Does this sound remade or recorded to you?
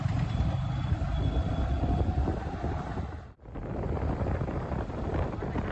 remade